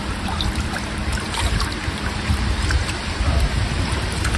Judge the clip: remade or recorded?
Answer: remade